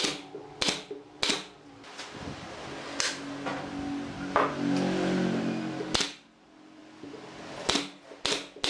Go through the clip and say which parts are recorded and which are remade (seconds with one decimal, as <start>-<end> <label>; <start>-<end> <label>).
0.0-8.7 recorded

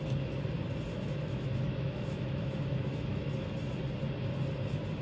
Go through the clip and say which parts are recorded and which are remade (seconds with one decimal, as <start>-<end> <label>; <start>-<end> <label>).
0.0-0.9 recorded; 0.9-3.3 remade; 3.3-5.0 recorded

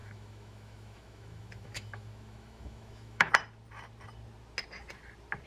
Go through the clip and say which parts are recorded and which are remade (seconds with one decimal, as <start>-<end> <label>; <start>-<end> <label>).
0.0-3.3 remade; 3.3-5.5 recorded